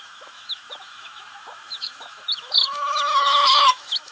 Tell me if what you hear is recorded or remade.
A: remade